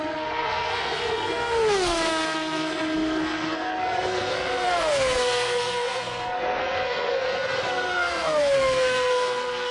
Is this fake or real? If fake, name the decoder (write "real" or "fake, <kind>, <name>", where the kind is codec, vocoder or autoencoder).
fake, codec, SNAC